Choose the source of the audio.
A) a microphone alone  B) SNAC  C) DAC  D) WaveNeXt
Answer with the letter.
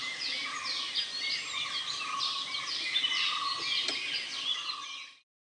A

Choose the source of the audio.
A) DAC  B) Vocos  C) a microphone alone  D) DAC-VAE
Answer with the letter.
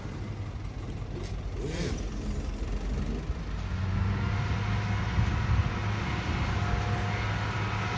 C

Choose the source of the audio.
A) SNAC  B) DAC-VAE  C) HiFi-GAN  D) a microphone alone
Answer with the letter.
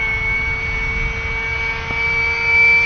D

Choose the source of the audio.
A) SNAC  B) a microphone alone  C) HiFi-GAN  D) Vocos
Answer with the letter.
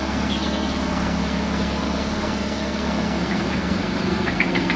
A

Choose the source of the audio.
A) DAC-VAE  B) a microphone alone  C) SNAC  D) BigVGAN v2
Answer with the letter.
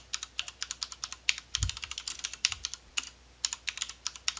B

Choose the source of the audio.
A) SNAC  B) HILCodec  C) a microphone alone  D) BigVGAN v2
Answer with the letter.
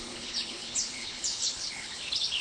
B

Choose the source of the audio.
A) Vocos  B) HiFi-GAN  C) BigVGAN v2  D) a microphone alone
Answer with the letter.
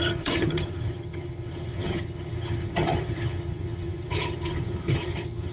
B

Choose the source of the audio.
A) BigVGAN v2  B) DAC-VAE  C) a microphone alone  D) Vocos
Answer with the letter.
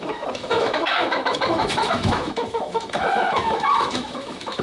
B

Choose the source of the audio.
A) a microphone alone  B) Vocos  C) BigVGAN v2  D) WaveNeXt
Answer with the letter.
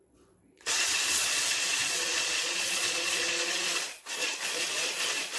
B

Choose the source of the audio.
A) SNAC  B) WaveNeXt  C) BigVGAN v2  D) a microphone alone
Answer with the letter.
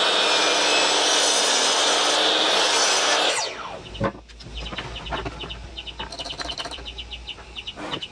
D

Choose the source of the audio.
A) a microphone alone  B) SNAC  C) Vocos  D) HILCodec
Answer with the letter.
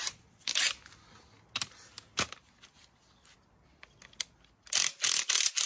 A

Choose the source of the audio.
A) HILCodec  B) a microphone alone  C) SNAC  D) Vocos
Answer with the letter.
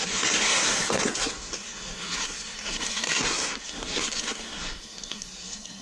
C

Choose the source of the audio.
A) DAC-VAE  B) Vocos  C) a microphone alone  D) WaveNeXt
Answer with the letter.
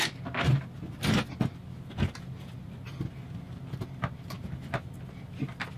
C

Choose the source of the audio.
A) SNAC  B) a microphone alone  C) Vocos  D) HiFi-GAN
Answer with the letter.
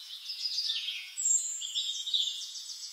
C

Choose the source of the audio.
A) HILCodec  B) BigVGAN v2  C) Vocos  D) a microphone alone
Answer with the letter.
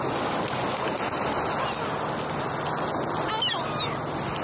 D